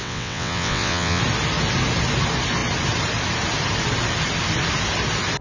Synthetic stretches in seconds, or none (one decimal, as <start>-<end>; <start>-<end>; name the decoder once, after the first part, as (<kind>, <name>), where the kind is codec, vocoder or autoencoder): 0.0-1.2 (vocoder, WaveNeXt)

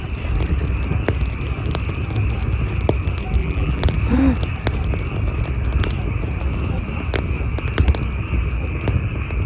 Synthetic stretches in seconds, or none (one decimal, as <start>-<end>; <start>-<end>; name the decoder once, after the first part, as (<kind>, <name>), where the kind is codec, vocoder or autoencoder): 3.4-3.9 (vocoder, BigVGAN v2)

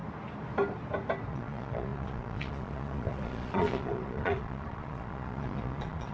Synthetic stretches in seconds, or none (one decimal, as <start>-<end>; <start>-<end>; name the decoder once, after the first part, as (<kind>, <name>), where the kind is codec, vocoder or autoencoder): 1.3-6.1 (vocoder, Vocos)